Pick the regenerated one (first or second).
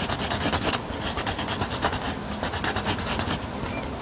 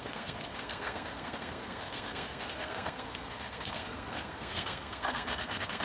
second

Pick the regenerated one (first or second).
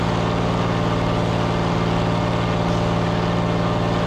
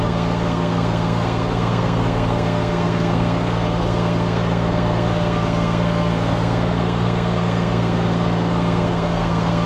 second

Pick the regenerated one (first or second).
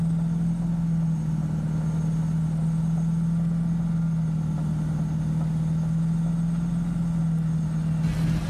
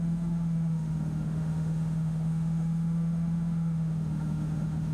second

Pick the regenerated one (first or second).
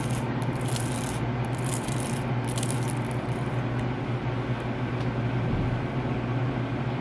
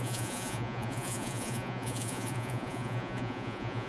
second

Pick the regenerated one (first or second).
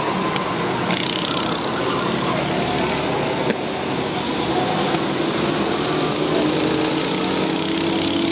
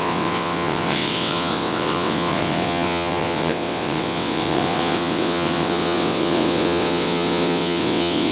second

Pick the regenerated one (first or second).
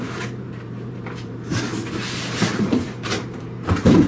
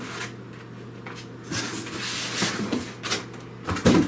first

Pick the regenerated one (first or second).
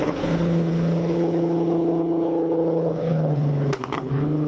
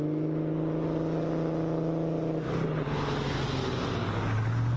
first